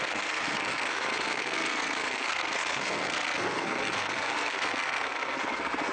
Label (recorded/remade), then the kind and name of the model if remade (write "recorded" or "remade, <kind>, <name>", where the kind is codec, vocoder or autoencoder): remade, codec, SNAC